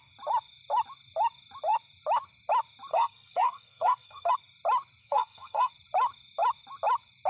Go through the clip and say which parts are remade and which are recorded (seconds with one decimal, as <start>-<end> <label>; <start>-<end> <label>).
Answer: 0.0-2.9 recorded; 2.9-4.3 remade; 4.3-5.0 recorded; 5.0-5.7 remade; 5.7-7.3 recorded